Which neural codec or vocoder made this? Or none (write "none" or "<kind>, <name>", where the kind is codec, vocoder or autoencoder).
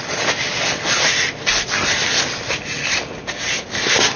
none